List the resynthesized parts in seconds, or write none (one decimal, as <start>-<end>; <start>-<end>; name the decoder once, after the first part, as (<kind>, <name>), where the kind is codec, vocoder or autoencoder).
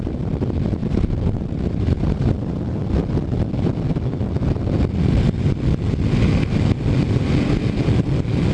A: 0.8-2.3 (vocoder, BigVGAN v2)